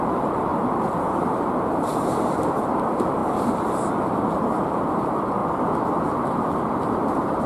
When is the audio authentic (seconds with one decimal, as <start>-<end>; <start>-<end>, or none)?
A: 0.5-1.3; 3.2-3.9; 5.4-6.1